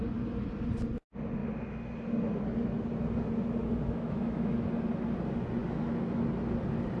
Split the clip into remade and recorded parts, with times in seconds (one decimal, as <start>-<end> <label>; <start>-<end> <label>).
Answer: 0.0-3.6 recorded; 3.6-4.7 remade; 4.7-5.6 recorded; 5.6-6.2 remade; 6.2-7.0 recorded